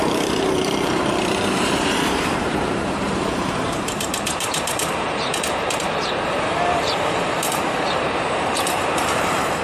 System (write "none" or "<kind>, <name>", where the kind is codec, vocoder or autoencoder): vocoder, BigVGAN v2